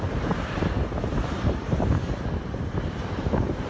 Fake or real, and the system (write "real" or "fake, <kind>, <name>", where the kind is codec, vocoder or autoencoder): fake, vocoder, BigVGAN v2